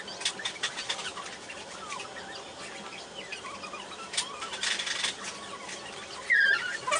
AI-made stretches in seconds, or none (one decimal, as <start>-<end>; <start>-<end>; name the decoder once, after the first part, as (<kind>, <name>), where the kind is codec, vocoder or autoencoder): none